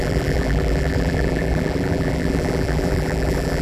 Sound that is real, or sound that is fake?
fake